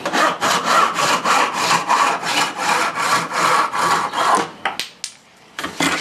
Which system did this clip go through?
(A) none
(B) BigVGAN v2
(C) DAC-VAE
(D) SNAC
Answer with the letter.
A